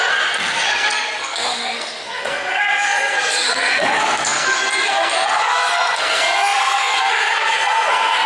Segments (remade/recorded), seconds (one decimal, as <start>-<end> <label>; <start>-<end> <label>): 0.0-8.3 remade